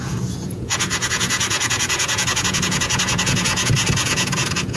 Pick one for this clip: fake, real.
fake